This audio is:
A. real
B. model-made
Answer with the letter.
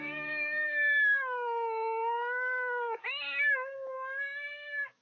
B